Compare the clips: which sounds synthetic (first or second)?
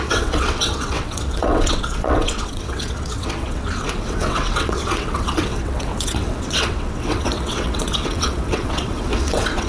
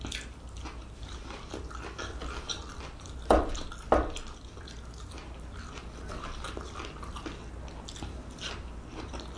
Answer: first